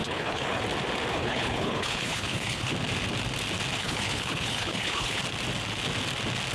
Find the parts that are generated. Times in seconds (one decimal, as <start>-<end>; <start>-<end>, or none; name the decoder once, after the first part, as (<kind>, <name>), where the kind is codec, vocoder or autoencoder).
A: 0.0-0.6 (codec, HILCodec); 1.1-2.7; 3.8-5.2